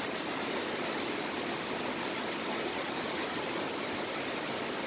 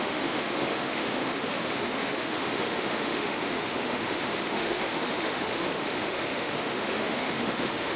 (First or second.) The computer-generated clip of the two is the second